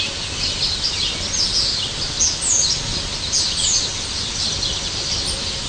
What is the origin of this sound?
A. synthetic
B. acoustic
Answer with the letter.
B